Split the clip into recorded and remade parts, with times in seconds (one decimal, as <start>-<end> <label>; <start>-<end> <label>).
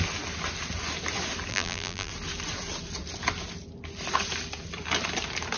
0.0-1.5 recorded; 1.5-2.1 remade; 2.1-5.6 recorded